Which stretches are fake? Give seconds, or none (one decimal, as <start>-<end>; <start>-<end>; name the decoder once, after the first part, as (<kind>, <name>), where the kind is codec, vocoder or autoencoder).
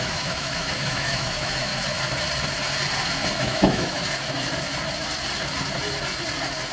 0.0-1.7 (autoencoder, DAC-VAE); 3.4-4.0